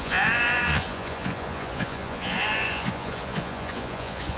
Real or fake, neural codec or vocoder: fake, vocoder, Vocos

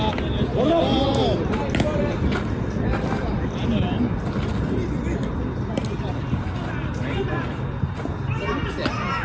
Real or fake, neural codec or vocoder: real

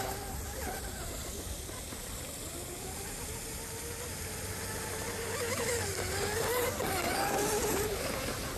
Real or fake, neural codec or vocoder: real